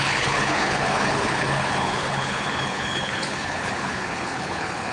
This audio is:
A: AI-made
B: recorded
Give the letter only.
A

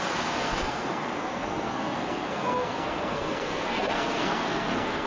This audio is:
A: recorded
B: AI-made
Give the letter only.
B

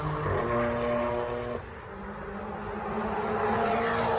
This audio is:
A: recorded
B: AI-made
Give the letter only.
A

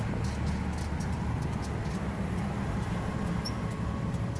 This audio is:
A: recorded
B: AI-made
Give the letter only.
A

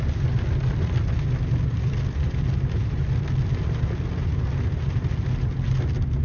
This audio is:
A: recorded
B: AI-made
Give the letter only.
A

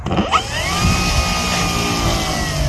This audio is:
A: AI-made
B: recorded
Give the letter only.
B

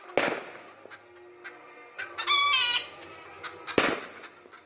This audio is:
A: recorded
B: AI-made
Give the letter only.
A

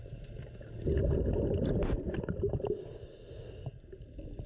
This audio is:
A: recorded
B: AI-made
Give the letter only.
A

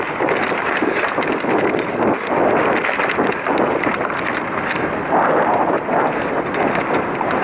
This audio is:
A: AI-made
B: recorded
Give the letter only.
B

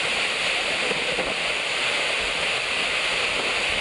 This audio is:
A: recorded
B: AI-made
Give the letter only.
A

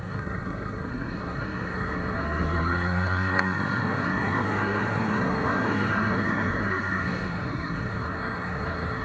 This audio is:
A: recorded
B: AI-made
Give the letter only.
B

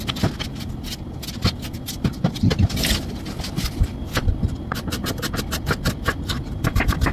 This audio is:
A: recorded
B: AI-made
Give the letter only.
A